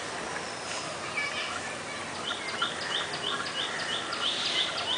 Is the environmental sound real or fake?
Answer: real